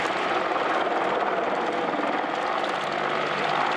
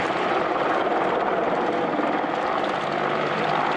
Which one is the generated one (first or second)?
second